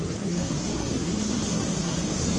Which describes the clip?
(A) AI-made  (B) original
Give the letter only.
A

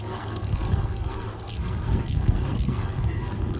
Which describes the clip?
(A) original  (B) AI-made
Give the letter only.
B